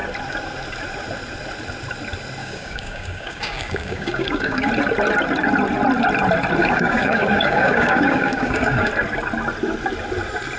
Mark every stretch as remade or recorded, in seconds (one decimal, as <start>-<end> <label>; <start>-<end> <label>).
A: 0.0-2.4 recorded; 2.4-4.7 remade; 4.7-6.6 recorded; 6.6-8.9 remade; 8.9-10.6 recorded